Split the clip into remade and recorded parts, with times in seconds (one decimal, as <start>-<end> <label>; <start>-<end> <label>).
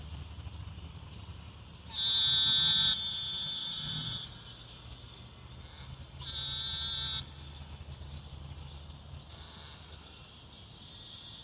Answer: 0.0-3.6 recorded; 3.6-4.3 remade; 4.3-11.4 recorded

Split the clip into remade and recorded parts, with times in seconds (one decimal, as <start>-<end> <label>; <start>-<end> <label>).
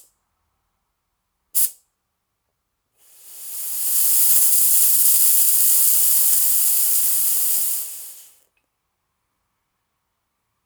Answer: 0.0-10.7 recorded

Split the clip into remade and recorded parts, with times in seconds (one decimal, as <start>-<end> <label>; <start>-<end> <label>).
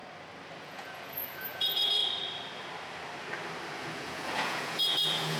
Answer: 0.0-0.6 recorded; 0.6-2.0 remade; 2.0-3.8 recorded; 3.8-5.4 remade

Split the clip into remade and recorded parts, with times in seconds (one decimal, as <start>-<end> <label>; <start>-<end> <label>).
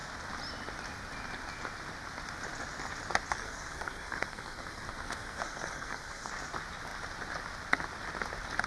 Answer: 0.0-3.4 recorded; 3.4-6.3 remade; 6.3-8.7 recorded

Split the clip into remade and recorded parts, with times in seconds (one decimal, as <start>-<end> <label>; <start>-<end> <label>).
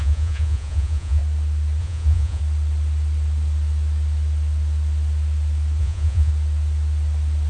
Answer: 0.0-1.2 remade; 1.2-1.8 recorded; 1.8-2.4 remade; 2.4-5.8 recorded; 5.8-6.3 remade; 6.3-7.5 recorded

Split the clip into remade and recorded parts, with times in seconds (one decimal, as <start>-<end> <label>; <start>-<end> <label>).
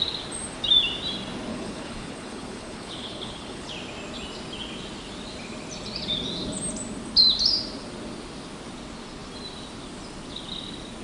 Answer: 0.0-1.5 recorded; 1.5-3.7 remade; 3.7-11.0 recorded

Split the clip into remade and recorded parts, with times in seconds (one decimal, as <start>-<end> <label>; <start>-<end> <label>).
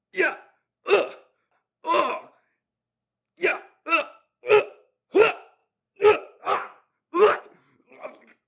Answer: 0.0-2.1 recorded; 2.1-2.7 remade; 2.7-5.6 recorded; 5.6-7.4 remade; 7.4-8.5 recorded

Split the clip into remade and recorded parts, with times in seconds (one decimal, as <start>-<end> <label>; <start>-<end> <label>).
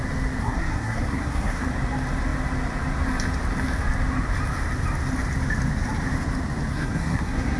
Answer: 0.0-0.4 recorded; 0.4-1.7 remade; 1.7-6.7 recorded; 6.7-7.6 remade